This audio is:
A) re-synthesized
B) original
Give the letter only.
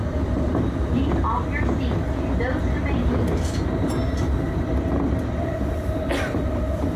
B